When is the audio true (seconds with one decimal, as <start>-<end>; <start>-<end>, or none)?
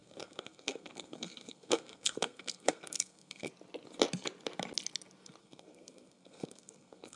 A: 3.5-5.4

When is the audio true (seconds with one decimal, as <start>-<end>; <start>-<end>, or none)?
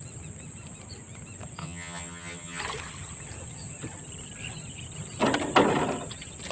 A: 0.0-1.6; 2.6-6.5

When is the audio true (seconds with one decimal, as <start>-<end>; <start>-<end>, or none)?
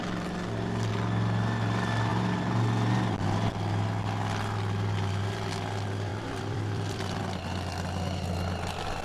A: 0.0-6.1; 7.2-9.0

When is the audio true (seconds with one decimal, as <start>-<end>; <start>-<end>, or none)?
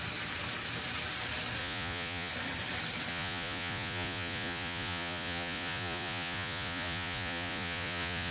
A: 0.0-1.6; 2.3-3.1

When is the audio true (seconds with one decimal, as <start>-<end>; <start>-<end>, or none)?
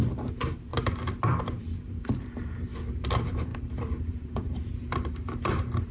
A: 0.7-1.6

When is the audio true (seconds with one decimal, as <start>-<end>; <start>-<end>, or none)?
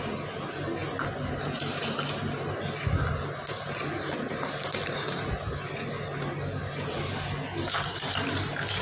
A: 0.0-8.8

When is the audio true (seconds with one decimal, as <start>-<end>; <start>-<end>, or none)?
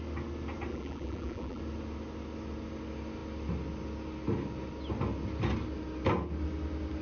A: 0.0-0.7; 1.6-7.0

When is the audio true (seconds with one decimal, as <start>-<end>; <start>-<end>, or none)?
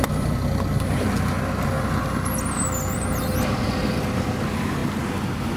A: 0.0-5.6